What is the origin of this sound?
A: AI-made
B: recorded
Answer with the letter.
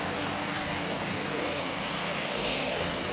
A